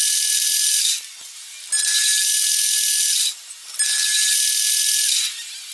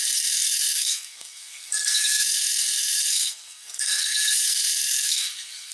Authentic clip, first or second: first